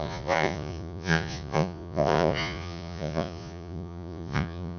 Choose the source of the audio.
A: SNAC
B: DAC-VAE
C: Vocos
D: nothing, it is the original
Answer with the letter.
C